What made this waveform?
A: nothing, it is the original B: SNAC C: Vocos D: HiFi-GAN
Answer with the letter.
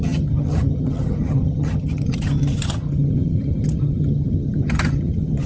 D